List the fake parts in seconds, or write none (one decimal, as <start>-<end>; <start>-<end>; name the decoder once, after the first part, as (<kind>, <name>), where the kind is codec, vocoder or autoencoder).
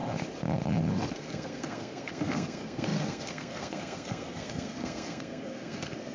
1.1-6.1 (codec, SNAC)